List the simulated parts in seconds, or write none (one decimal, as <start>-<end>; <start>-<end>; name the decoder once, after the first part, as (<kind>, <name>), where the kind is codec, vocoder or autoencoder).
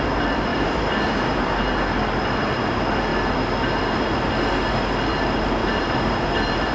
0.5-1.6 (vocoder, BigVGAN v2); 5.6-6.7